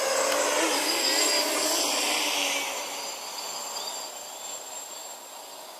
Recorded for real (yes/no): yes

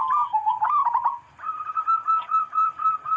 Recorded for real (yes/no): no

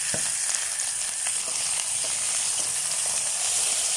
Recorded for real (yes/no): yes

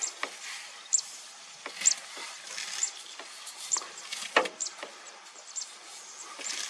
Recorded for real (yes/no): yes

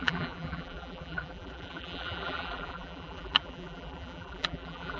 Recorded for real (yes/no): no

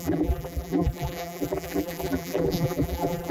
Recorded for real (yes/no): no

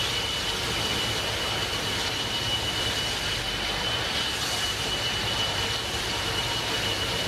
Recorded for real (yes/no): yes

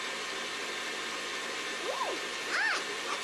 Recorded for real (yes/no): yes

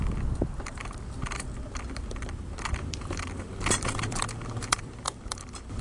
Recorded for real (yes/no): no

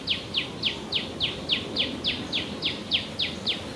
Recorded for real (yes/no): yes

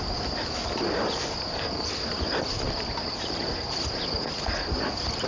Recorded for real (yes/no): yes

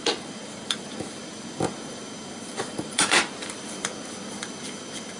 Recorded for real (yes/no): no